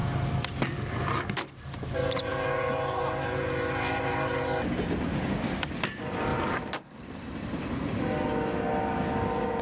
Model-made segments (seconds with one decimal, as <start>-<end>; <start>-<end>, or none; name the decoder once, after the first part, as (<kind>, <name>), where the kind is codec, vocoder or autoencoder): 6.3-8.0 (vocoder, BigVGAN v2)